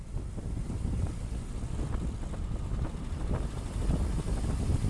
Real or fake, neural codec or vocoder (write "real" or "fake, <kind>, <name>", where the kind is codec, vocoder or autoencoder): real